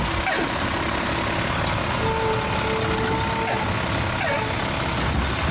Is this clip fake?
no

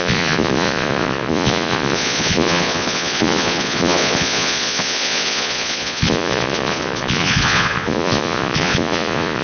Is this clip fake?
yes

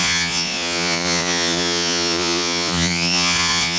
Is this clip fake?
yes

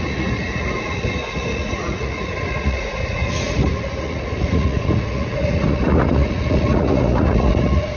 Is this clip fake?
yes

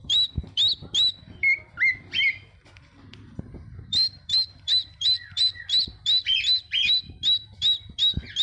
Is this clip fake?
no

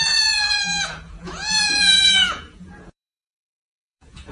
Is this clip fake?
yes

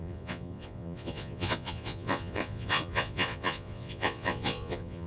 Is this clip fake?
yes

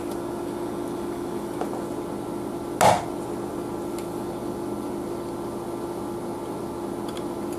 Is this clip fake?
no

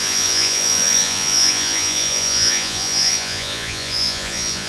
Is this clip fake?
yes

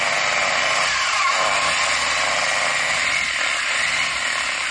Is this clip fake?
no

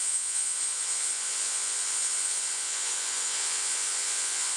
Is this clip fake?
yes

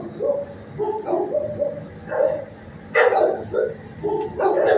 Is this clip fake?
no